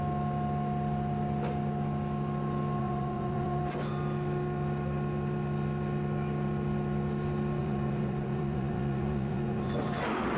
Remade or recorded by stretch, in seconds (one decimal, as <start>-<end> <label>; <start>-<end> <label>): 0.0-2.8 recorded; 2.8-3.6 remade; 3.6-7.6 recorded; 7.6-10.0 remade; 10.0-10.4 recorded